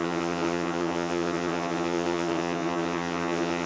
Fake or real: fake